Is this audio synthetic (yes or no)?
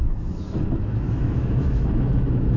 yes